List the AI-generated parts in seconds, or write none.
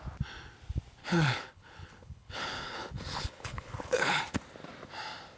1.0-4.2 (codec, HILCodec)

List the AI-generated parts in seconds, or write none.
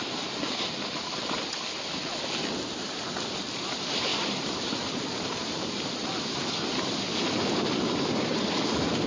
4.1-8.1 (vocoder, BigVGAN v2)